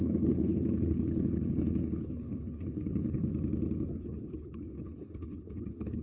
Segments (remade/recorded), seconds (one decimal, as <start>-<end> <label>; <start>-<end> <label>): 0.0-3.3 remade; 3.3-3.9 recorded; 3.9-6.0 remade

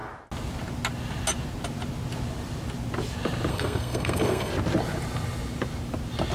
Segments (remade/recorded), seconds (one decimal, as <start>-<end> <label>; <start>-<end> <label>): 0.0-3.5 recorded; 3.5-4.5 remade; 4.5-6.3 recorded

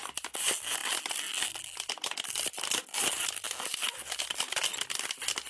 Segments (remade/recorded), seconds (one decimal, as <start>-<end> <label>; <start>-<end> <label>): 0.0-5.5 recorded

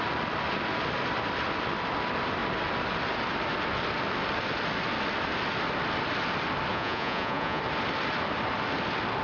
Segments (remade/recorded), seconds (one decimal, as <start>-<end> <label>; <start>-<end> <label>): 0.0-6.7 recorded; 6.7-7.6 remade; 7.6-9.2 recorded

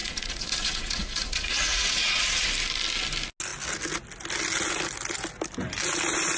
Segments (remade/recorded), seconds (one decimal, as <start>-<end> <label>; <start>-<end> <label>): 0.0-2.5 remade; 2.5-6.4 recorded

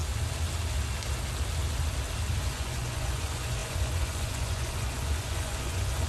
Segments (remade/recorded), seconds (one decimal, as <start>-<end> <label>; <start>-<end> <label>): 0.0-2.4 recorded; 2.4-6.1 remade